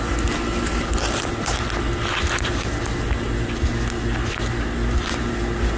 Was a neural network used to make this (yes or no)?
no